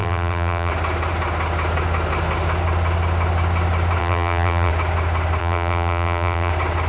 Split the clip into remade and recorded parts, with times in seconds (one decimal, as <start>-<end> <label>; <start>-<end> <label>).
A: 0.0-0.7 remade; 0.7-4.0 recorded; 4.0-4.7 remade; 4.7-5.4 recorded; 5.4-6.5 remade; 6.5-6.9 recorded